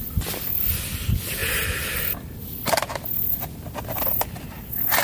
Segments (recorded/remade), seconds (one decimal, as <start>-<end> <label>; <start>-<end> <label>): 0.0-5.0 recorded